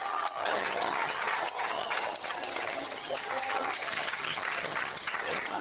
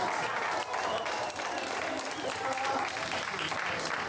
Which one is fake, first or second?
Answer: first